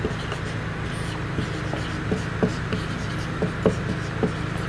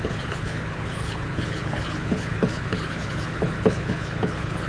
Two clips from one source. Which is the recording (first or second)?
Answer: first